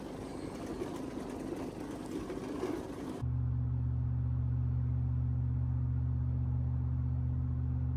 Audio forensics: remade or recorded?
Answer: recorded